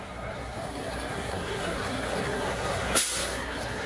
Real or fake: fake